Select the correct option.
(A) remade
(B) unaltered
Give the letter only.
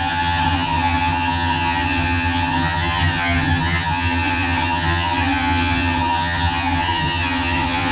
A